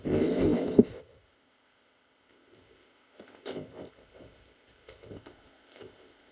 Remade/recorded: remade